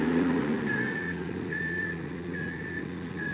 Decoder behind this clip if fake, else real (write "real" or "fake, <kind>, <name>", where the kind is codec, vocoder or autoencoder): fake, vocoder, Vocos